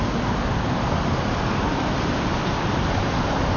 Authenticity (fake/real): real